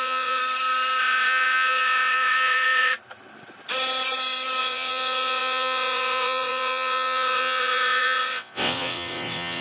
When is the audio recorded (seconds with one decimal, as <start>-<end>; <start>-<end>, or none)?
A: 0.4-1.0; 2.9-4.6